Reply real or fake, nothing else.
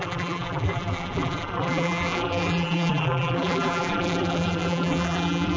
fake